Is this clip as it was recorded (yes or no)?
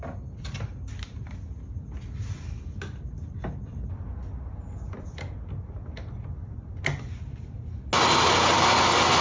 yes